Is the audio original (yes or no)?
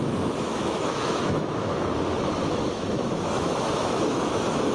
no